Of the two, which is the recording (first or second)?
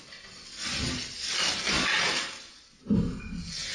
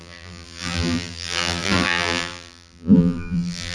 first